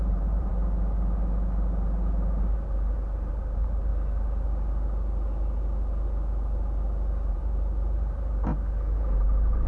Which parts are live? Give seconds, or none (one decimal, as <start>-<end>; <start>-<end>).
0.5-3.3; 3.9-7.3; 8.5-9.7